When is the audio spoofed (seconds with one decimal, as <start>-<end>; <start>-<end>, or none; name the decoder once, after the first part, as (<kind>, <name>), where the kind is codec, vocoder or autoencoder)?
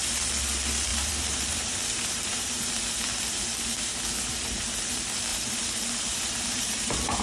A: 0.9-2.7 (vocoder, BigVGAN v2); 5.3-7.2